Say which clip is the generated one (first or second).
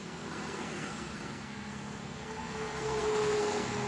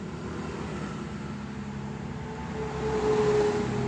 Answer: first